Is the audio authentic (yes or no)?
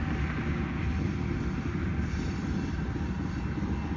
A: yes